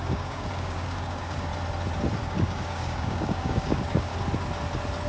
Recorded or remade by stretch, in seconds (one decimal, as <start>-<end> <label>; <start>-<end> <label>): 0.0-1.5 remade; 1.5-2.2 recorded; 2.2-4.1 remade; 4.1-5.1 recorded